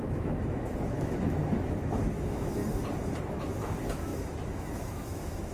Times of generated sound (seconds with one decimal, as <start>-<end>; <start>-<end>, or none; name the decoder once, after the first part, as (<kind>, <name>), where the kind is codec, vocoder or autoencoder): 0.0-2.6 (autoencoder, DAC-VAE); 3.3-5.5